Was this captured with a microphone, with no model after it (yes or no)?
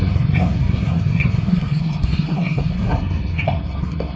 no